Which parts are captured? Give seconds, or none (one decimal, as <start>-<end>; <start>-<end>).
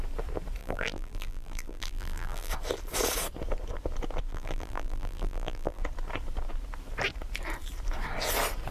0.0-0.6; 2.5-4.3; 5.8-8.7